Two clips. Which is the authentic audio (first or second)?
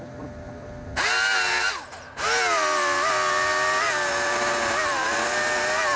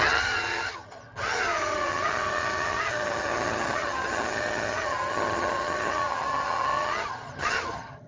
first